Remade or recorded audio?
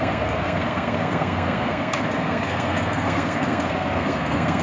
remade